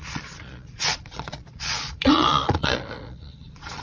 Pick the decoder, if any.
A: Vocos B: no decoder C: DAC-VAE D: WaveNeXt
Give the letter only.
A